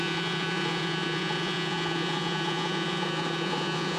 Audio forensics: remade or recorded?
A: remade